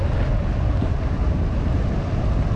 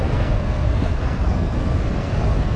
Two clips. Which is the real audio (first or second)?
first